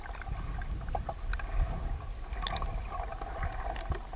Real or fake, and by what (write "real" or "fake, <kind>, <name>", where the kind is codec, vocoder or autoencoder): real